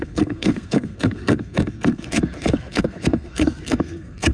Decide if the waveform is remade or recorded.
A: remade